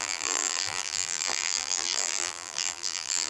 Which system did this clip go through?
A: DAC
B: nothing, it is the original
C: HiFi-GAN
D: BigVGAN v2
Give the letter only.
D